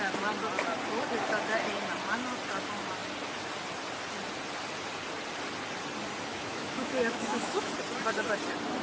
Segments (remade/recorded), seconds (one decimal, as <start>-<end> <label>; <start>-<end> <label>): 0.0-6.3 recorded; 6.3-7.7 remade; 7.7-8.8 recorded

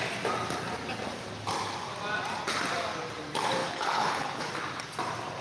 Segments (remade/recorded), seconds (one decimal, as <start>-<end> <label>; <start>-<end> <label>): 0.0-3.6 recorded; 3.6-4.5 remade; 4.5-5.4 recorded

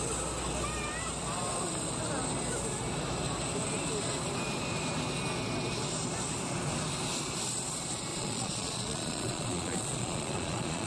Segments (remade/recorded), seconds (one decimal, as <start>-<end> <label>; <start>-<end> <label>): 0.0-8.1 recorded; 8.1-10.9 remade

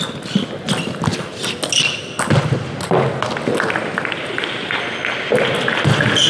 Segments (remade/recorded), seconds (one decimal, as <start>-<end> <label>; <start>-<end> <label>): 0.0-6.3 recorded

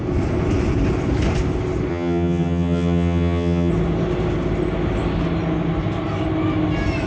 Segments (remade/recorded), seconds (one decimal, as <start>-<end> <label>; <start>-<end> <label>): 0.0-1.9 recorded; 1.9-3.7 remade; 3.7-7.1 recorded

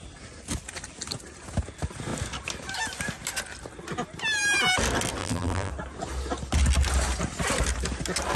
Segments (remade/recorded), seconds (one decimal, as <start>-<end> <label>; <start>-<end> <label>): 0.0-5.2 recorded; 5.2-5.7 remade; 5.7-8.4 recorded

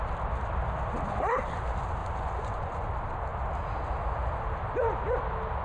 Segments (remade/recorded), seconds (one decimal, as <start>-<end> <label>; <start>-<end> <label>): 0.0-2.0 recorded; 2.0-2.9 remade; 2.9-5.6 recorded